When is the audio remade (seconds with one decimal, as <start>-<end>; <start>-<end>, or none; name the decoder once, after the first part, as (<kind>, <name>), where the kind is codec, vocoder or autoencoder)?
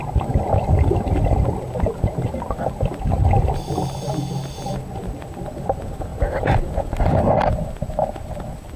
none